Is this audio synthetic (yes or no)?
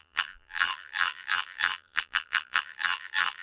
yes